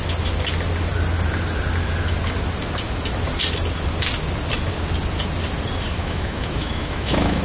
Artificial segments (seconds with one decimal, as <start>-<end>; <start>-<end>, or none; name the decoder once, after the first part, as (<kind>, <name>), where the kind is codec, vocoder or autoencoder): 6.0-7.4 (autoencoder, DAC-VAE)